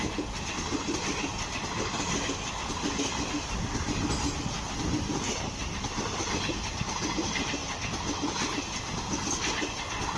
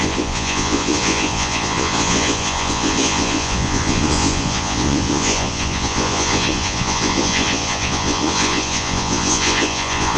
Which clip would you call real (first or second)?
first